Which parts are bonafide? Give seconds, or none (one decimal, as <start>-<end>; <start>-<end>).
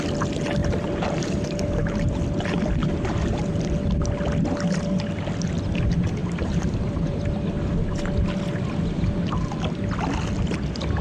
0.0-0.6; 2.2-2.8; 3.7-6.2; 7.2-11.0